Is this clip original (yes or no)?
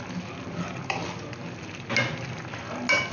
yes